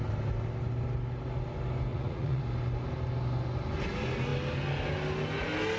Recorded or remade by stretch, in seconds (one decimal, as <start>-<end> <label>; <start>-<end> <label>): 0.0-1.9 recorded; 1.9-2.4 remade; 2.4-5.8 recorded